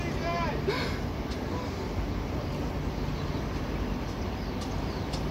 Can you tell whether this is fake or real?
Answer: real